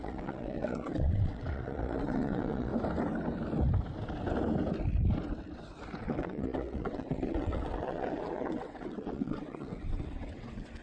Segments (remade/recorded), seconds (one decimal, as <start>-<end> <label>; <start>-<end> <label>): 0.0-2.7 remade; 2.7-6.0 recorded; 6.0-10.8 remade